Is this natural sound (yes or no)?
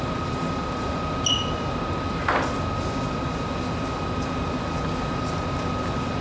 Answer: yes